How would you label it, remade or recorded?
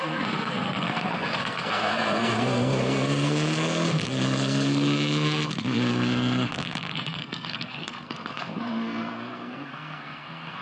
remade